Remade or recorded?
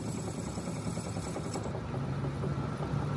recorded